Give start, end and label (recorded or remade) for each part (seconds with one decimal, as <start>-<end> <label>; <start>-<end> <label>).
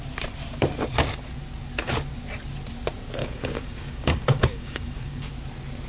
0.0-3.2 recorded; 3.2-5.3 remade; 5.3-5.9 recorded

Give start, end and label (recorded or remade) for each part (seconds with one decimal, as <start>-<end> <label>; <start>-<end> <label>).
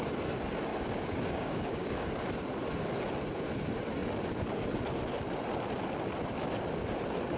0.0-0.7 recorded; 0.7-2.1 remade; 2.1-7.4 recorded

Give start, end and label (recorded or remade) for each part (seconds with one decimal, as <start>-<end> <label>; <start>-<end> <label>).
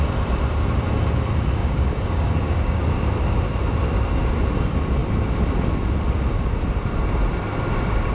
0.0-1.6 recorded; 1.6-2.8 remade; 2.8-8.1 recorded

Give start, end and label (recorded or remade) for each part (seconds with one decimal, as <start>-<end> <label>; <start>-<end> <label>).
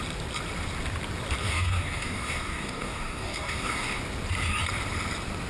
0.0-1.4 recorded; 1.4-4.0 remade; 4.0-5.5 recorded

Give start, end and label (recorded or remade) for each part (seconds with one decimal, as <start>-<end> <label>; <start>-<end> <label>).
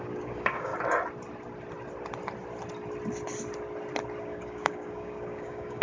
0.0-0.7 remade; 0.7-4.2 recorded; 4.2-5.8 remade